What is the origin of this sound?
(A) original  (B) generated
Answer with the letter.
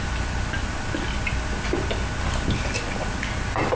A